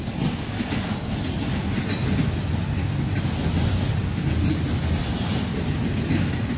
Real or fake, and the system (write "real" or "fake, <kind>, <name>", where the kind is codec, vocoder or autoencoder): real